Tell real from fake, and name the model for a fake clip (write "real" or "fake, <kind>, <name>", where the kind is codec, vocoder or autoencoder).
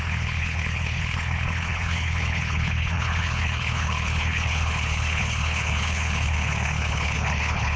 fake, codec, HILCodec